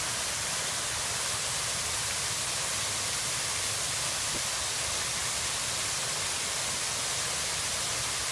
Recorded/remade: recorded